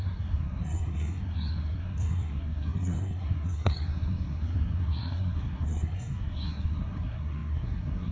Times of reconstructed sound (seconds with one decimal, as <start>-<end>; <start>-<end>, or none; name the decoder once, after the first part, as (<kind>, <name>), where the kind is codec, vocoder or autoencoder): 0.0-8.1 (codec, SNAC)